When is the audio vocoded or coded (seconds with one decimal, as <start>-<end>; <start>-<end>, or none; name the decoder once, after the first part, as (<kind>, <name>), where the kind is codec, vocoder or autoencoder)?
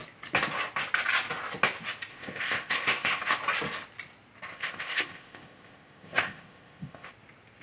2.1-3.2 (codec, ZipCodec); 4.5-7.1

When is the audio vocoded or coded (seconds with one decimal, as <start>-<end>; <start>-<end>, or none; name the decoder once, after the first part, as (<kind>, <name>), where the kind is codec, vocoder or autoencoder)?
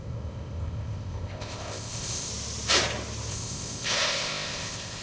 0.0-2.3 (codec, ZipCodec); 3.3-5.0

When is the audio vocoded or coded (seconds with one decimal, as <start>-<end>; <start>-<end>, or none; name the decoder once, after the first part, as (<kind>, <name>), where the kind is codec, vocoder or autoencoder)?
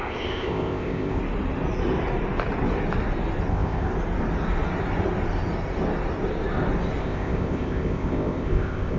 0.0-1.2 (codec, ZipCodec); 3.5-3.9; 7.0-9.0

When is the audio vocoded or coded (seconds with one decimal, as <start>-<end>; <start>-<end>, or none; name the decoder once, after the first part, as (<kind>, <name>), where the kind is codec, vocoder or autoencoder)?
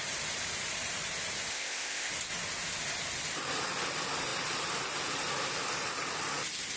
1.5-2.1 (codec, ZipCodec)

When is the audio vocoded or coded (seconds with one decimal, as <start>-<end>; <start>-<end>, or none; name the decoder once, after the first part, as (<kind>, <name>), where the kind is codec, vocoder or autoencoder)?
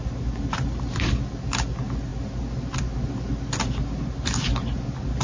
none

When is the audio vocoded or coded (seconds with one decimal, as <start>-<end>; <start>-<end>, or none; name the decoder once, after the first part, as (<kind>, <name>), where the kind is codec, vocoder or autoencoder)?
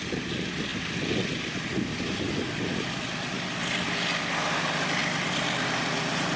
none